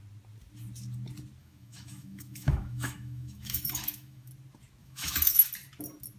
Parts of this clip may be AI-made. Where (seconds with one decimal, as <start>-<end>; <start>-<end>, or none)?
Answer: 1.4-4.3; 4.8-5.5